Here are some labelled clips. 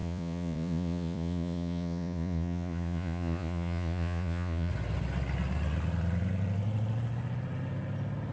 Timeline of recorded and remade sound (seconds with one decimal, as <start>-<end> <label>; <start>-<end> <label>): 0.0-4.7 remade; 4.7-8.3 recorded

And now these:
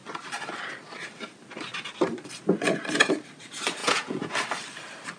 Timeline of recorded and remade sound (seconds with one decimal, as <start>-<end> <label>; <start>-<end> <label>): 0.0-3.8 recorded; 3.8-4.3 remade; 4.3-5.2 recorded

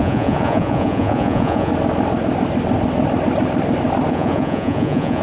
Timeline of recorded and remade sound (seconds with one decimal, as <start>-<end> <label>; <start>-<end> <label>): 0.0-1.7 remade; 1.7-4.1 recorded; 4.1-5.2 remade